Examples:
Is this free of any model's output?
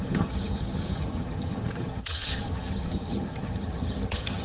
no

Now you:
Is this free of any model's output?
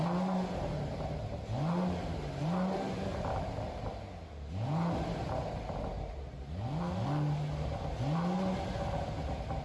yes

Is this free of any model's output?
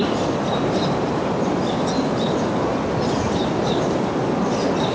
yes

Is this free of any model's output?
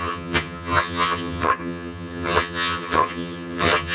no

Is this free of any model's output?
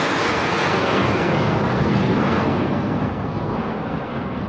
no